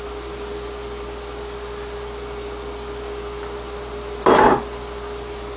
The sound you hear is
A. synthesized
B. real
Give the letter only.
B